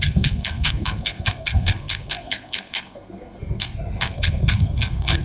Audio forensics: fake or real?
fake